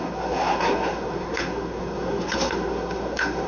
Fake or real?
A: fake